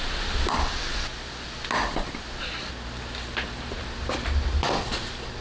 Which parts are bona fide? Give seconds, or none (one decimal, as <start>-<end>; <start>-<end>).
0.0-5.4